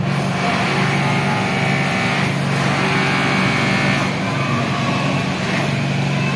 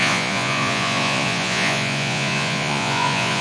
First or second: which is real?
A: first